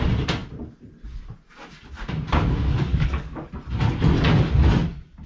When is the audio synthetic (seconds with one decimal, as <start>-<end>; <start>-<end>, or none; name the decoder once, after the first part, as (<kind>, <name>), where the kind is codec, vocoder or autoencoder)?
2.9-3.5 (codec, DAC)